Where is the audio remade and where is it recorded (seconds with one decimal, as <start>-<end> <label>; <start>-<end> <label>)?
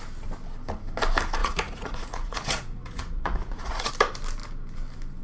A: 0.0-1.4 recorded; 1.4-3.9 remade; 3.9-5.2 recorded